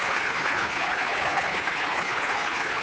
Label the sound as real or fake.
fake